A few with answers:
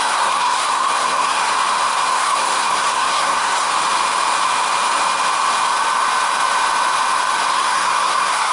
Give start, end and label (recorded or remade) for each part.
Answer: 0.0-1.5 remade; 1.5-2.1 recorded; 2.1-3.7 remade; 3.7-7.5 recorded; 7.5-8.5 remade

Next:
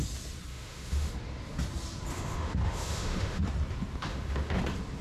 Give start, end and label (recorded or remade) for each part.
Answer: 0.0-0.5 recorded; 0.5-1.1 remade; 1.1-2.1 recorded; 2.1-3.4 remade; 3.4-4.1 recorded; 4.1-4.6 remade; 4.6-5.0 recorded

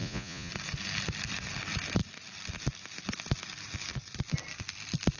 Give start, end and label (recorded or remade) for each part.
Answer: 0.0-0.5 remade; 0.5-5.2 recorded

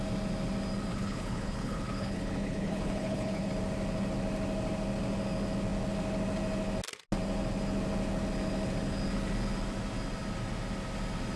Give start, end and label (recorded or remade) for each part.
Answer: 0.0-0.9 recorded; 0.9-3.5 remade; 3.5-11.4 recorded